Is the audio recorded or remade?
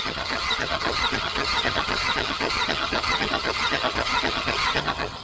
remade